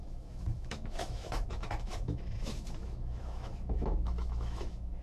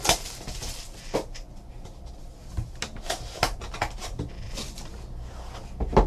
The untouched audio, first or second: second